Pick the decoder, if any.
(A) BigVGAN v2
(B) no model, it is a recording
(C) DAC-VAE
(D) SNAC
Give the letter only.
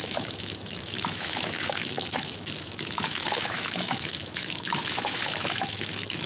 C